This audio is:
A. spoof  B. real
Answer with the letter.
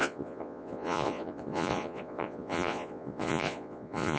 A